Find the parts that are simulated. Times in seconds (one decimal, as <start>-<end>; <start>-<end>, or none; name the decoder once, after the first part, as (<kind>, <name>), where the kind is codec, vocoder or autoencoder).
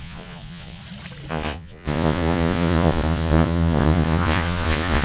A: 0.0-0.8 (vocoder, Vocos); 1.3-5.0